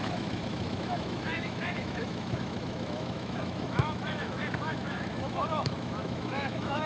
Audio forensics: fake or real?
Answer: fake